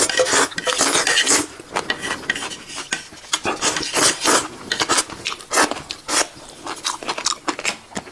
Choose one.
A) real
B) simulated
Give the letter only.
A